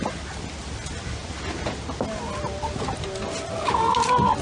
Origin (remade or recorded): recorded